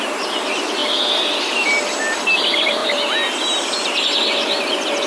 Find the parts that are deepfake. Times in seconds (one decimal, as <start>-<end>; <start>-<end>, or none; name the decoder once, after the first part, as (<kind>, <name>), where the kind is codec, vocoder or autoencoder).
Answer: none